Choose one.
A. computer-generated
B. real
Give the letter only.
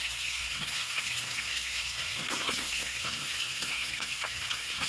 A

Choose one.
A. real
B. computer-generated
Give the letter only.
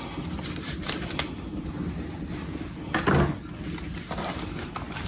A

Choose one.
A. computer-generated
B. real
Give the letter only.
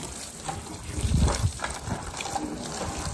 B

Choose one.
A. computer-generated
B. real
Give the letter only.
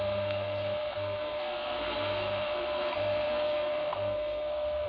A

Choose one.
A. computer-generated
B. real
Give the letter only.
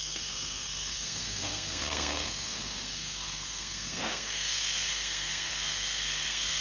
A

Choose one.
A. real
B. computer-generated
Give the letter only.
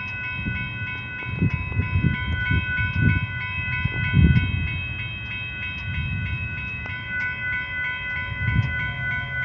A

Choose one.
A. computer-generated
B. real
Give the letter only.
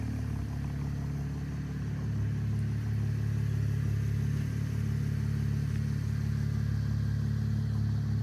B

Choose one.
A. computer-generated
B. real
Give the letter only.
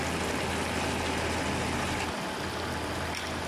B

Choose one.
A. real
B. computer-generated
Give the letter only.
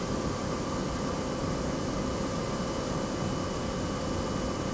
A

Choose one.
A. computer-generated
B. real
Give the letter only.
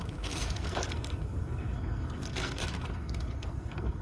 A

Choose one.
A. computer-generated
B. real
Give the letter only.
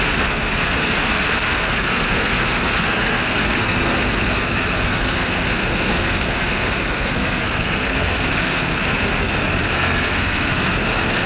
A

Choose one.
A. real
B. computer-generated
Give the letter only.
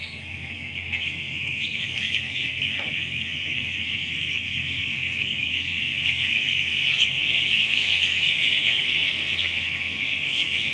B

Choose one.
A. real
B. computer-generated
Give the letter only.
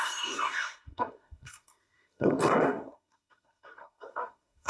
B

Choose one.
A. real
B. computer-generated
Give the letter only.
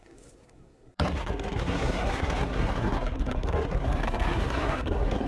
B